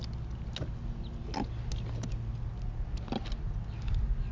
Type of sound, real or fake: real